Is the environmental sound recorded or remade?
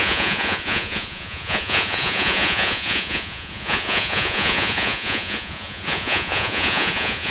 remade